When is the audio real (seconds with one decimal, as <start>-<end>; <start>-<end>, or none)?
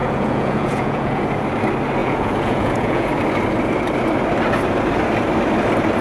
1.2-2.0; 3.1-6.0